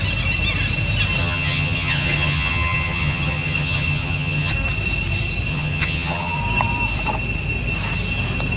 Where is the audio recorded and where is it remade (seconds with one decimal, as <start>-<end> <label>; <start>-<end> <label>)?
0.0-1.2 recorded; 1.2-4.5 remade; 4.5-5.5 recorded; 5.5-6.4 remade; 6.4-8.6 recorded